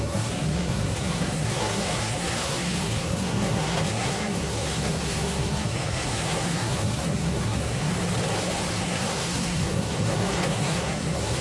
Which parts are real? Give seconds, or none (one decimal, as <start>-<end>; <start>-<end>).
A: 7.9-8.8